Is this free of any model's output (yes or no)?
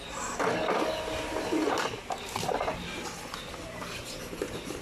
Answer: yes